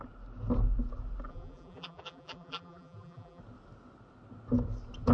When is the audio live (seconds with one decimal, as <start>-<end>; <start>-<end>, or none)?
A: 0.0-1.3; 3.4-5.1